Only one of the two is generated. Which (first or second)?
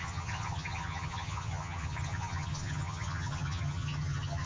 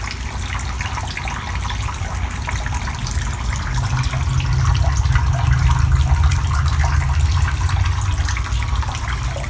first